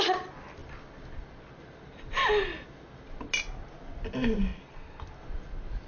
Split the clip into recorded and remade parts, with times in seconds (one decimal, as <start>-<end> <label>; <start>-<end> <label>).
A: 0.0-5.9 recorded